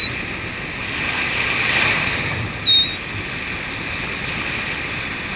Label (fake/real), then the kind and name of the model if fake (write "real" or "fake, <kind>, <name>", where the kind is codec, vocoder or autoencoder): real